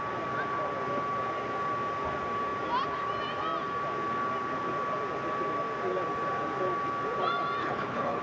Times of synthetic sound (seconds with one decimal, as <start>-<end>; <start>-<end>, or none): 7.6-8.2